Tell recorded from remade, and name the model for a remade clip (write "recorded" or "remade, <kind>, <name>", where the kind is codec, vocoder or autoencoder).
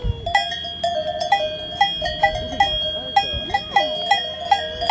recorded